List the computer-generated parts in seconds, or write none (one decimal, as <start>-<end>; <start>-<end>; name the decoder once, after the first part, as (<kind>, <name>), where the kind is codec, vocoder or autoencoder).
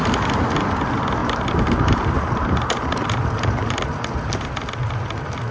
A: 1.2-4.5 (vocoder, BigVGAN v2)